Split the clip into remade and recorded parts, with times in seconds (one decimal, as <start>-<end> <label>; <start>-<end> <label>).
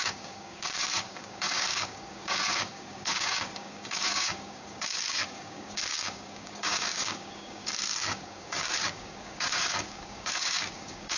0.0-11.2 remade